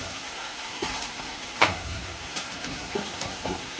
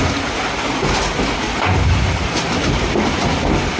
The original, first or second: second